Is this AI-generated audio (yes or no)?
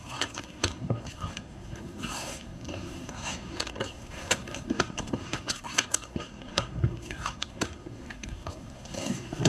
yes